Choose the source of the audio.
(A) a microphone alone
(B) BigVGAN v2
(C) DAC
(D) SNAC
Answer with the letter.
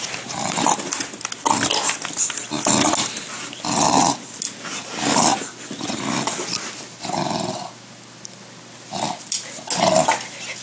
A